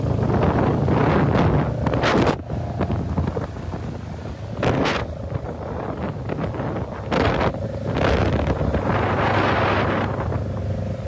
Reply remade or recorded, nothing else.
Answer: recorded